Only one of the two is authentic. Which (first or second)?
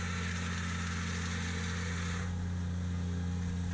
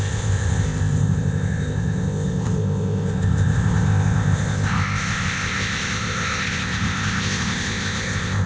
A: first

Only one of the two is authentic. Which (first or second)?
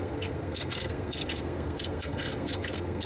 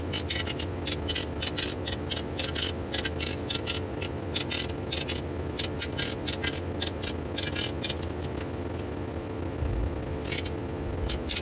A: second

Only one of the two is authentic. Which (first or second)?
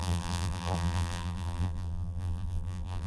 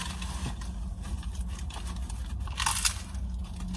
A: second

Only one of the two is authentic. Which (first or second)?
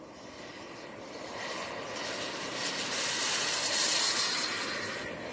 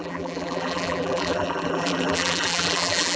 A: first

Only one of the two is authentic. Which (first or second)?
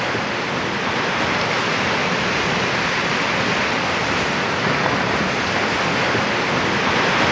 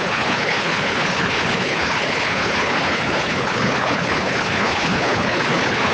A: first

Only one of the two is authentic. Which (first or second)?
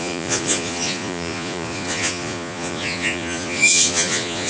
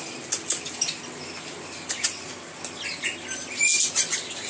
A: second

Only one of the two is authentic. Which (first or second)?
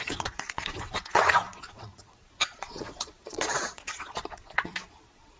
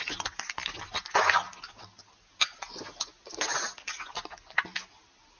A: second